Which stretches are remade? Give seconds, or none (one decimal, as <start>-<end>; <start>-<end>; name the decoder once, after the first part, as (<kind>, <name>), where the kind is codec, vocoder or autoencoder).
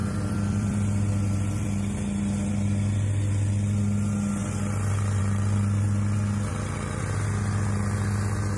0.0-2.5 (vocoder, BigVGAN v2); 4.4-5.2; 6.5-7.0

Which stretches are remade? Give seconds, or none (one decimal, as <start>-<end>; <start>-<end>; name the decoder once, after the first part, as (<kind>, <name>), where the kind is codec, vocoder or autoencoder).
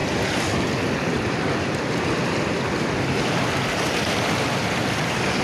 none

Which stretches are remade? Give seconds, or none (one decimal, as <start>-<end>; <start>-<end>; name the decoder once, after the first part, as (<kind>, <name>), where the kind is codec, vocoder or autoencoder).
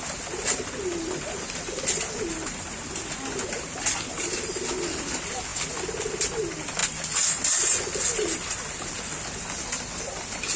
none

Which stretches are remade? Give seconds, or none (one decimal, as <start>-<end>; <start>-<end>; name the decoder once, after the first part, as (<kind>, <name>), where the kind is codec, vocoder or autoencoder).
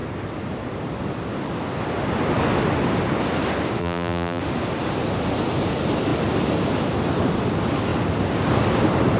3.8-4.4 (vocoder, BigVGAN v2)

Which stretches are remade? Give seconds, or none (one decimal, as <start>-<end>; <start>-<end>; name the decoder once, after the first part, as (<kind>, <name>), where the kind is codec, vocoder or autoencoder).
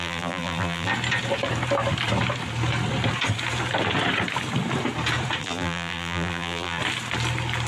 0.0-0.9 (vocoder, BigVGAN v2); 5.4-6.8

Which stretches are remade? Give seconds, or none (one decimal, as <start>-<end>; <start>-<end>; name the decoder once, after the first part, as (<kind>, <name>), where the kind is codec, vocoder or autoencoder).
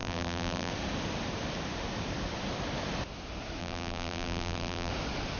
0.0-0.7 (vocoder, BigVGAN v2); 3.6-4.9